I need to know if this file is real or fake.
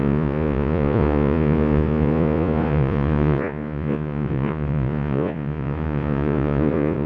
fake